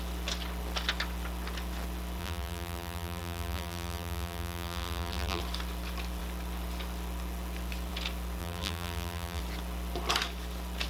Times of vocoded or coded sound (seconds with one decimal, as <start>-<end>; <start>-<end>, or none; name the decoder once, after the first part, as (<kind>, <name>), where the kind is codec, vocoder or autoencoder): 2.2-5.4 (vocoder, BigVGAN v2); 8.4-9.4